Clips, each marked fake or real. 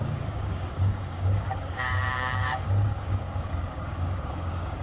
fake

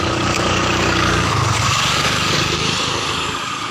fake